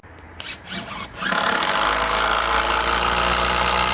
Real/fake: real